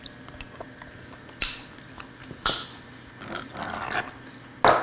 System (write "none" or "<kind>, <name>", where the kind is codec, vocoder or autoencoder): none